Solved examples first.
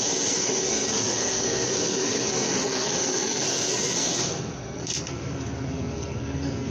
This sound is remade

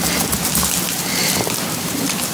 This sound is recorded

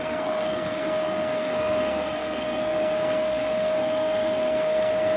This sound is remade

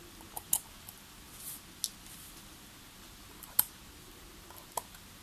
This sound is recorded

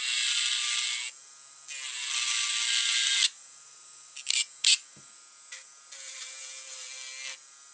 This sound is recorded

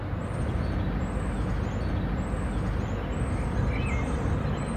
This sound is recorded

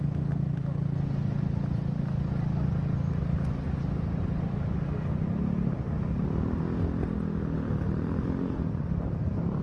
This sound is recorded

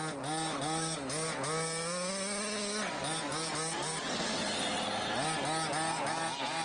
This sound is recorded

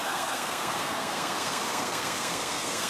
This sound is remade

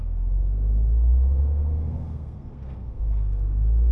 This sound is remade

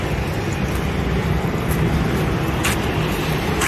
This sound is recorded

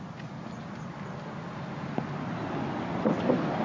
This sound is recorded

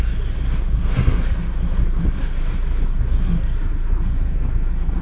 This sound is remade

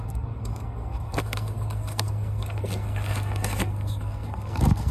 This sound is remade